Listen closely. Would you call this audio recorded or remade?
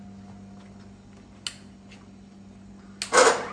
recorded